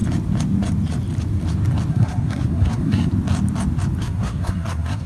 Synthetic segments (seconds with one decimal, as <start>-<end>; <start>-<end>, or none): 1.9-3.1; 4.0-5.1